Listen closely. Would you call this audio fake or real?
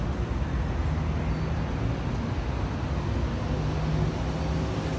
real